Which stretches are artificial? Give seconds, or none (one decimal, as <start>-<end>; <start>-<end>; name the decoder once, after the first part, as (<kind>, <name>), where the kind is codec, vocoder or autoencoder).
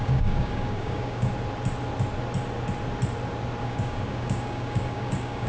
0.0-1.3 (codec, DAC); 3.6-5.5